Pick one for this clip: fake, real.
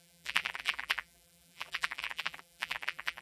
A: fake